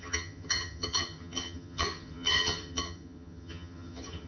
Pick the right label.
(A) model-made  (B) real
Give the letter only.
A